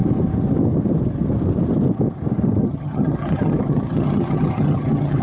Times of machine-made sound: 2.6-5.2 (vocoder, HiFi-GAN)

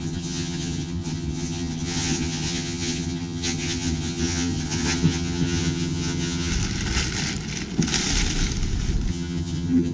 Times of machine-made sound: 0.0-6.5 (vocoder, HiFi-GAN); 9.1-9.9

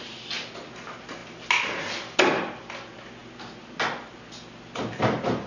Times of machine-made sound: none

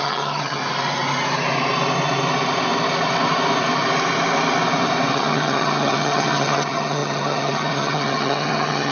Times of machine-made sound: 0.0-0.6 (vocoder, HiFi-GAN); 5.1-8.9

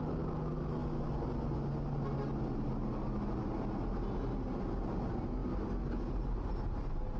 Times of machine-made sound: none